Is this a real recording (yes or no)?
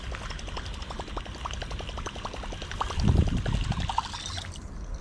yes